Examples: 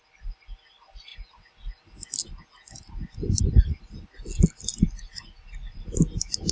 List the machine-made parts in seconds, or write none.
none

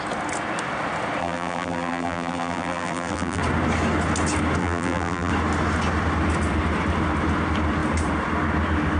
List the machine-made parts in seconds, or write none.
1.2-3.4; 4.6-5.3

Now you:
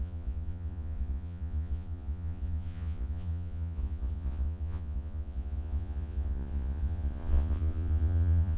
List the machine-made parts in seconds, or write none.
0.0-8.6

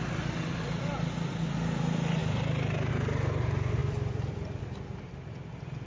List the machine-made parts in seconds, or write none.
none

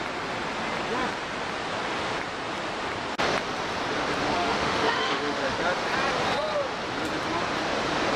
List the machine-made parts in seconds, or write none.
4.3-5.6

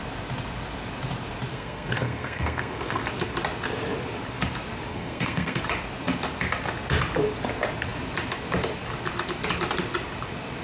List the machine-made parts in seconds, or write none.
1.5-3.0; 4.9-5.6

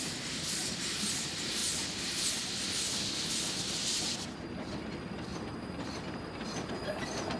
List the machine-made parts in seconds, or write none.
none